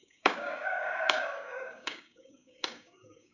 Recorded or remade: remade